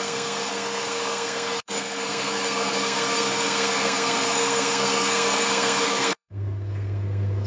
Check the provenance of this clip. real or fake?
fake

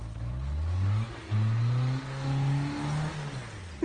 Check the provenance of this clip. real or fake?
real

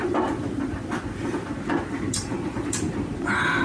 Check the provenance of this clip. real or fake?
real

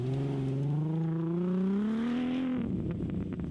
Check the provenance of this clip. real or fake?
real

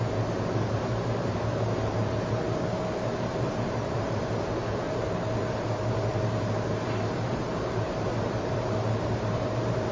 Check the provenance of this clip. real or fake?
fake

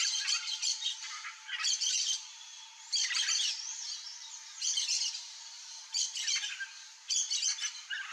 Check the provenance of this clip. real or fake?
real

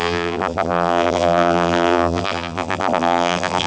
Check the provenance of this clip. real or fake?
fake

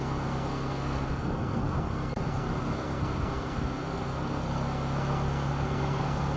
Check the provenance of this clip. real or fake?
fake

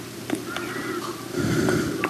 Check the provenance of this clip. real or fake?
real